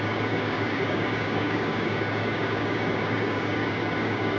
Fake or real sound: fake